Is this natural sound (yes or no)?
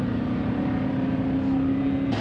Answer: yes